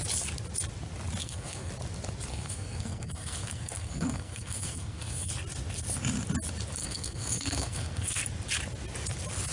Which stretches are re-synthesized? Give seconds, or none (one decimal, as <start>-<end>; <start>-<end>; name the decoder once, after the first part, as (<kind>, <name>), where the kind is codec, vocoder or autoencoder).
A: 1.2-1.7 (codec, SNAC); 2.3-5.3; 6.8-8.2